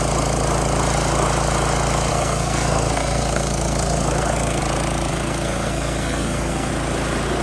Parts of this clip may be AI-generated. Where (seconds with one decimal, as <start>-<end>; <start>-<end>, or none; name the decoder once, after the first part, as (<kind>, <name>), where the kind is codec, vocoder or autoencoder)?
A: 2.1-4.6 (codec, SNAC); 5.1-6.7